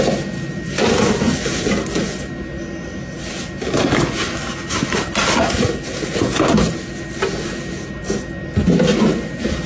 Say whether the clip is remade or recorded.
recorded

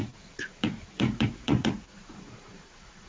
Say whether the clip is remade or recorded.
remade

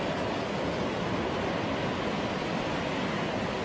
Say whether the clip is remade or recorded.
recorded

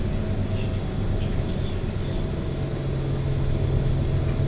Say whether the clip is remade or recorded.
recorded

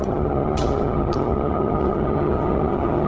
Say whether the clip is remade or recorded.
remade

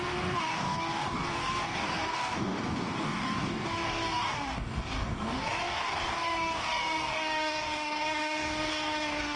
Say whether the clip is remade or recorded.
remade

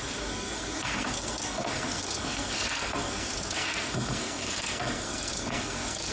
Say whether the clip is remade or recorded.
remade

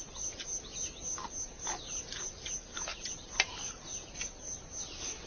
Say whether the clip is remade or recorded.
recorded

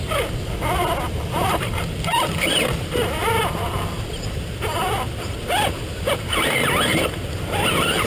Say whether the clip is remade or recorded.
recorded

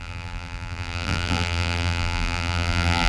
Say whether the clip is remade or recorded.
remade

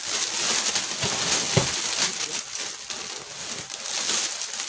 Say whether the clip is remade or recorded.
recorded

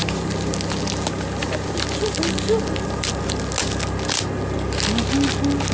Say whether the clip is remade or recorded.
recorded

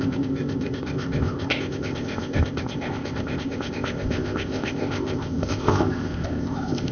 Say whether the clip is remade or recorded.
remade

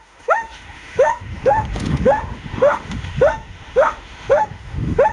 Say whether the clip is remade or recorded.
remade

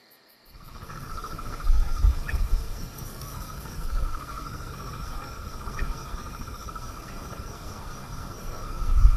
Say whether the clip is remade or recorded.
remade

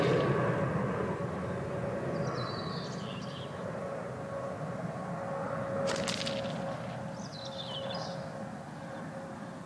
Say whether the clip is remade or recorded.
recorded